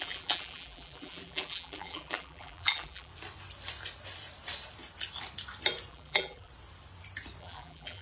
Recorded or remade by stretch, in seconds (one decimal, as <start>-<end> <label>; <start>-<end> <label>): 0.0-3.1 remade; 3.1-5.9 recorded; 5.9-6.5 remade; 6.5-7.4 recorded; 7.4-8.0 remade